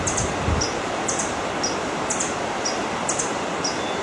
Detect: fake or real real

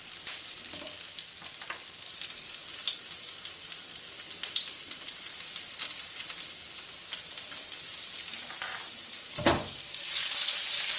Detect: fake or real real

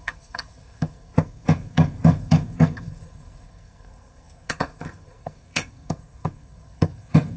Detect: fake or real fake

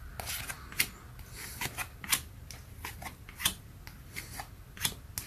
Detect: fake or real real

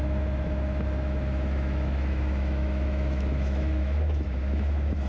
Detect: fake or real fake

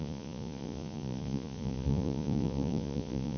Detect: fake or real fake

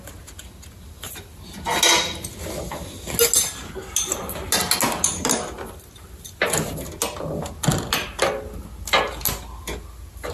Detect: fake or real real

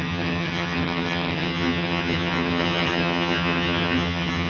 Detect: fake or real fake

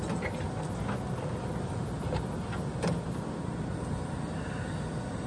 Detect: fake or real real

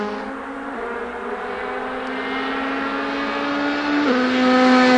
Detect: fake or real real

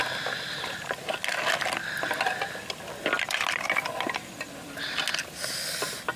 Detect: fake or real real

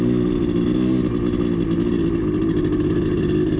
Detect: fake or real real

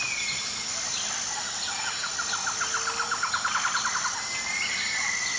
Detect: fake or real real